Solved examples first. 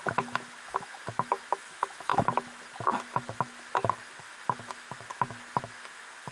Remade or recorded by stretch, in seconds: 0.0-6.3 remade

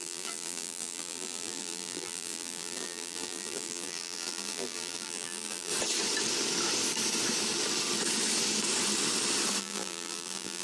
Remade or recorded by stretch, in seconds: 0.0-5.7 remade; 5.7-9.6 recorded; 9.6-10.6 remade

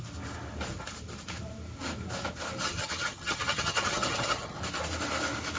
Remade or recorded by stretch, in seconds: 0.0-2.6 recorded; 2.6-4.6 remade; 4.6-5.6 recorded

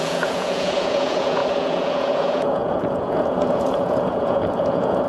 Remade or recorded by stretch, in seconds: 0.0-5.1 remade

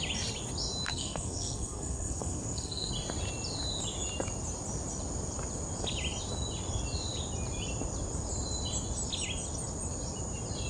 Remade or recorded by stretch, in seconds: 0.0-0.9 recorded; 0.9-2.9 remade; 2.9-10.7 recorded

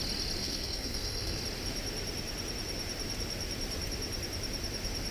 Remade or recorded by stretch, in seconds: 0.0-0.4 recorded; 0.4-1.4 remade; 1.4-5.1 recorded

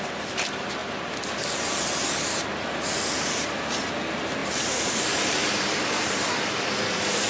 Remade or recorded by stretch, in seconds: 0.0-4.4 recorded; 4.4-6.3 remade; 6.3-7.3 recorded

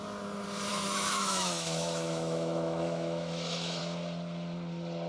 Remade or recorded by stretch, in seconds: 0.0-0.7 recorded; 0.7-3.8 remade; 3.8-5.1 recorded